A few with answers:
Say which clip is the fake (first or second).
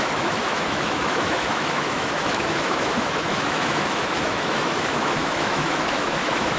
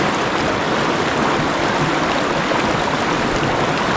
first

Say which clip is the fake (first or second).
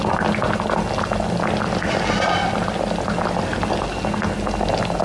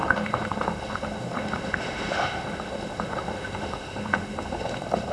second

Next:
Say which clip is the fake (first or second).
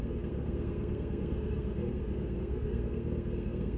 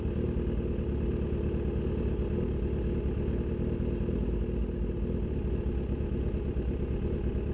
first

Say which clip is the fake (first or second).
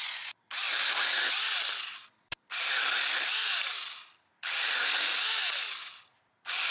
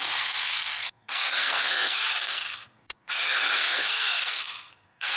second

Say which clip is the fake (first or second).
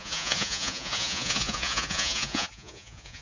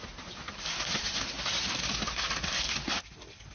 first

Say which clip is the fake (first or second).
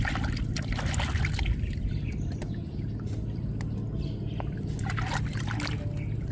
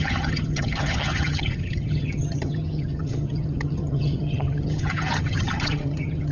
second